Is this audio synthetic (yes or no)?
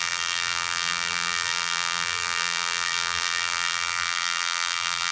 yes